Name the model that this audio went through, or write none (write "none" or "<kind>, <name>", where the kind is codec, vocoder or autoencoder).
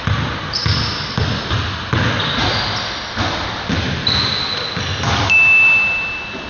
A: none